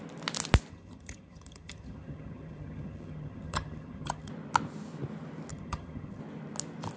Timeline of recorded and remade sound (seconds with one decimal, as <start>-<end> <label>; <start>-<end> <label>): 0.0-0.7 recorded; 0.7-4.3 remade; 4.3-5.5 recorded; 5.5-6.2 remade; 6.2-7.0 recorded